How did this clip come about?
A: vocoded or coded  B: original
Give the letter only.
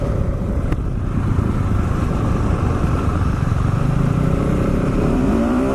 A